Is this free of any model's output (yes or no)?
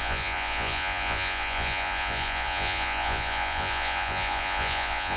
no